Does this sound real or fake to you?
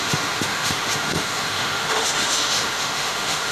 fake